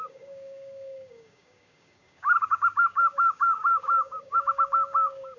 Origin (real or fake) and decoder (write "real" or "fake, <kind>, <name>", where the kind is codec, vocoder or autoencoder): fake, codec, DAC